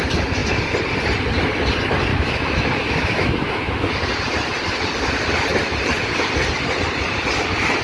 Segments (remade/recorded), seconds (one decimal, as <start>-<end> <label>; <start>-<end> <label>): 0.0-2.1 recorded; 2.1-3.9 remade; 3.9-7.8 recorded